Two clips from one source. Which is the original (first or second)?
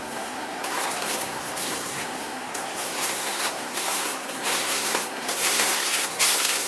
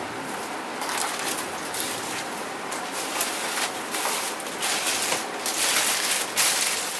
second